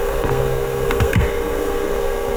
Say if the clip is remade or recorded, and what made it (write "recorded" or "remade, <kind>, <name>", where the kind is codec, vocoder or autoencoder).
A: remade, codec, SNAC